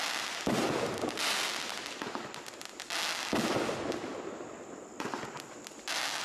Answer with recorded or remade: recorded